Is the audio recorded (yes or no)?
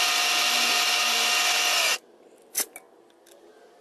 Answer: yes